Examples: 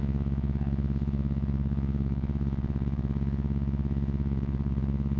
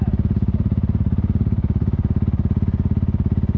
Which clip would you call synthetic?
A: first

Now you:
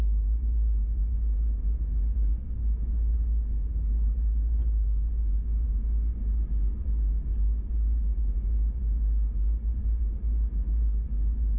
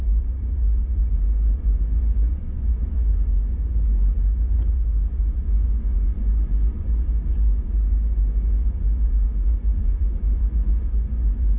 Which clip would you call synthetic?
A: second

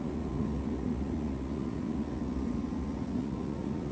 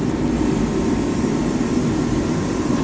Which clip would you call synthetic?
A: first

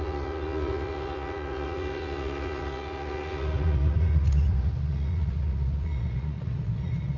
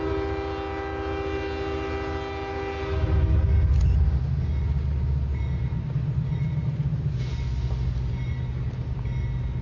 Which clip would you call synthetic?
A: first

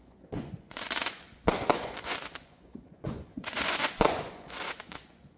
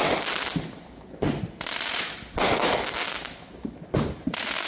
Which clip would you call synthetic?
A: first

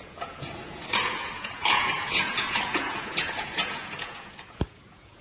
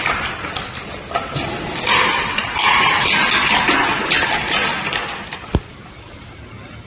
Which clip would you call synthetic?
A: first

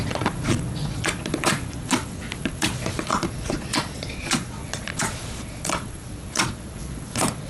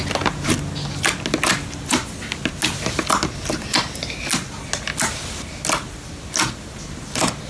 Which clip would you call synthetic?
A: first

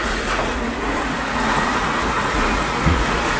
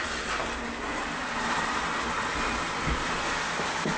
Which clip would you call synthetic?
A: first